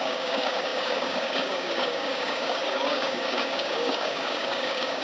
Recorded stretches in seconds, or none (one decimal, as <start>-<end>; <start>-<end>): none